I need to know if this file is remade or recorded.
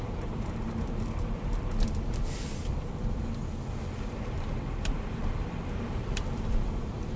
remade